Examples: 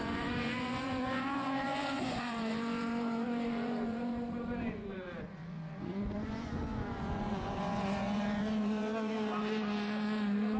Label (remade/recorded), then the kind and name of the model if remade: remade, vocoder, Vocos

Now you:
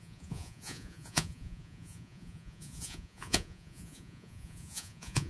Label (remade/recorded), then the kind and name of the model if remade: remade, vocoder, Vocos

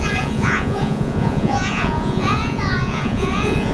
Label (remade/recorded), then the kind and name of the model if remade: remade, vocoder, Vocos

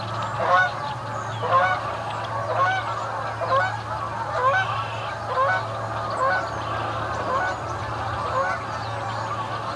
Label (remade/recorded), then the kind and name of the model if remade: recorded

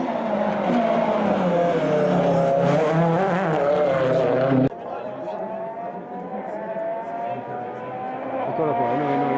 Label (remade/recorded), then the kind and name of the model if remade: recorded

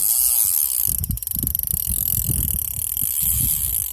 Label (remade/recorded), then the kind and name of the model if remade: recorded